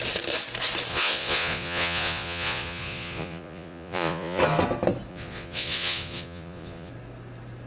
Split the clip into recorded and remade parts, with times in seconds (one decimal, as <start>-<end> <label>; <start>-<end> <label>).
0.0-0.9 recorded; 0.9-4.4 remade; 4.4-5.1 recorded; 5.1-6.9 remade; 6.9-7.7 recorded